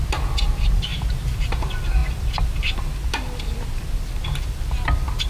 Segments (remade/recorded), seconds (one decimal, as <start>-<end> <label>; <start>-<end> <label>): 0.0-0.9 recorded; 0.9-1.5 remade; 1.5-5.3 recorded